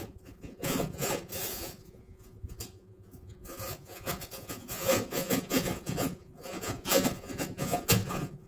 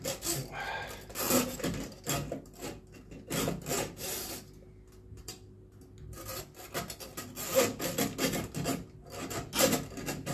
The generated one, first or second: first